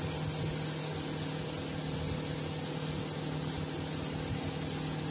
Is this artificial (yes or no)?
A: no